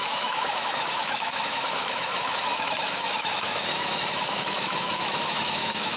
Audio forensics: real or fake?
fake